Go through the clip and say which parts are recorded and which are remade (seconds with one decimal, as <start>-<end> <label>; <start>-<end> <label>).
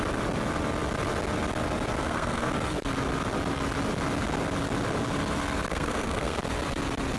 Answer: 0.0-2.0 recorded; 2.0-2.5 remade; 2.5-5.7 recorded; 5.7-6.4 remade; 6.4-7.2 recorded